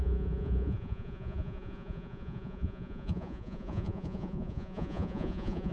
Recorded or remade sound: remade